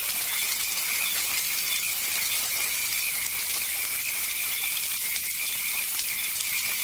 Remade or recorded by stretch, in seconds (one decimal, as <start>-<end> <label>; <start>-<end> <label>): 0.0-6.8 recorded